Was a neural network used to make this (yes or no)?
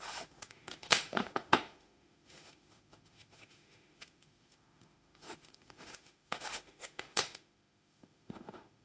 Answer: yes